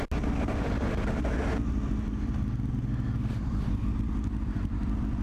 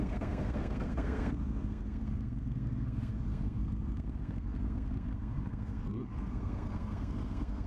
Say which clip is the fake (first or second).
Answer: second